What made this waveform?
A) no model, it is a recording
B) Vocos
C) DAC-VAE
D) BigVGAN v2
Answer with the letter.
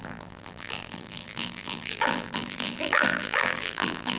D